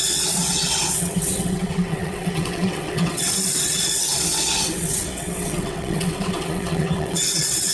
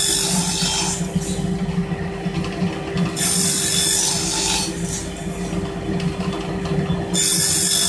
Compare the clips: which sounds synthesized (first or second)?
first